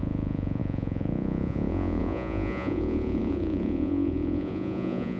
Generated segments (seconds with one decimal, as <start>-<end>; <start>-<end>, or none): 0.0-5.2